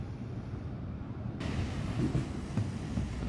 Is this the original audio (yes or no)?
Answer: yes